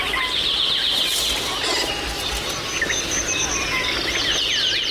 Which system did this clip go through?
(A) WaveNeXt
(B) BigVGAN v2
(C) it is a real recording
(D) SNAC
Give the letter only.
C